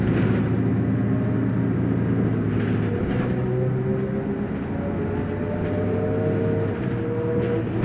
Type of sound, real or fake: real